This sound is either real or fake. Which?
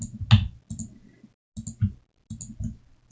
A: real